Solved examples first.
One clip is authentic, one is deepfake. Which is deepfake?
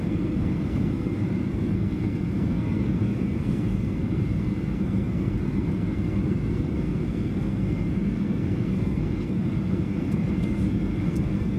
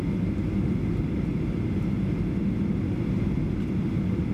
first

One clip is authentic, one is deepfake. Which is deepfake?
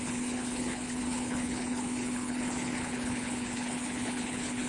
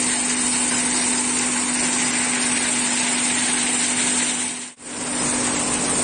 first